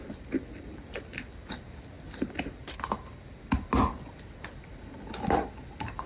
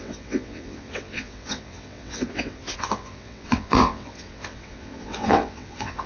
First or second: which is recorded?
first